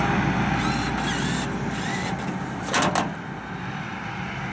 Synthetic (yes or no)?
no